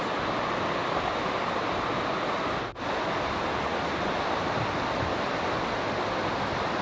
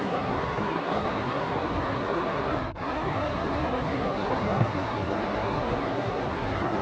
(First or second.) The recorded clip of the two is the first